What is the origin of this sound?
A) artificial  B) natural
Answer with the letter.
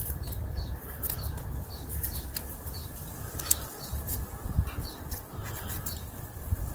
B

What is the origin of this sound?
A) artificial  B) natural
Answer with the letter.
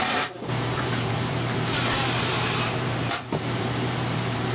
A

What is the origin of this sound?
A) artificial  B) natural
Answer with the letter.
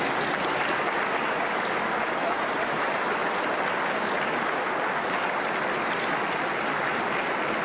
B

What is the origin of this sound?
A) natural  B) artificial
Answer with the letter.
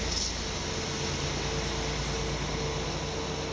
A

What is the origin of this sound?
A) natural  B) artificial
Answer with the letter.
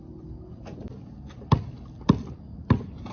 A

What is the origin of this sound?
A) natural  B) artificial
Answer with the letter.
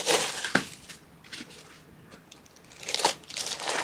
B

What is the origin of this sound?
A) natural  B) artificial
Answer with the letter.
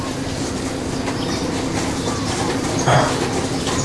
A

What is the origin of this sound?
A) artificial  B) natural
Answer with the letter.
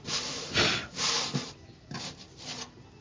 B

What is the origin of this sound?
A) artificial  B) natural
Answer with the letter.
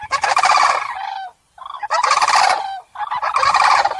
A